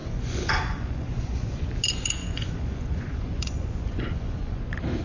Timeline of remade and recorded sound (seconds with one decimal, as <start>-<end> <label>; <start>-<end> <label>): 0.0-1.7 remade; 1.7-2.2 recorded; 2.2-4.6 remade; 4.6-5.0 recorded